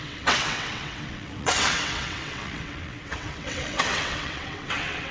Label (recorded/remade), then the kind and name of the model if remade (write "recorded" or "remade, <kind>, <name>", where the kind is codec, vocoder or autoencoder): remade, vocoder, WaveNeXt